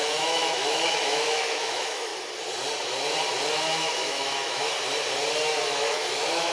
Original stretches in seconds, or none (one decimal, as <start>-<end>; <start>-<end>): 2.1-3.5; 4.7-5.6